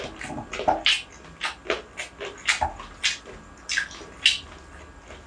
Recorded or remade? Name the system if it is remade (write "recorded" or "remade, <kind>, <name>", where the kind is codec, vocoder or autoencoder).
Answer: recorded